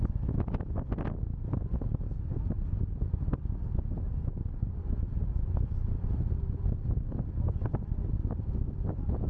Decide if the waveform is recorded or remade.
recorded